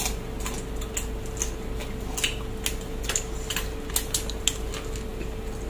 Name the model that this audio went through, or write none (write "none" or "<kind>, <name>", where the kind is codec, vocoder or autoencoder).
none